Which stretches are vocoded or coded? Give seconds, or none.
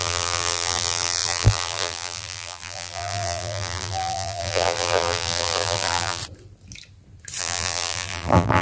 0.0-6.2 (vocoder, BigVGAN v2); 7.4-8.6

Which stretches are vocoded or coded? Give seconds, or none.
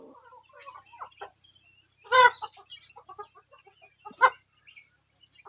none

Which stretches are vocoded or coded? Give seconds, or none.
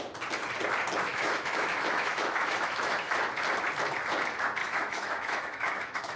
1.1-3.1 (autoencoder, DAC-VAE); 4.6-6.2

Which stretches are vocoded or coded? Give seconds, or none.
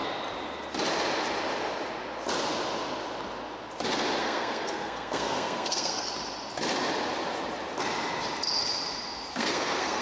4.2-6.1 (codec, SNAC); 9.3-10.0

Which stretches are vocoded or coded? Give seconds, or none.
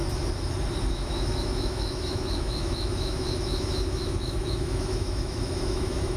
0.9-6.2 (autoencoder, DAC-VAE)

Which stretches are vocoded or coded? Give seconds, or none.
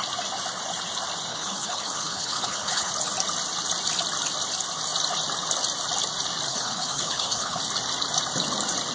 1.3-2.9 (codec, HILCodec); 6.5-7.6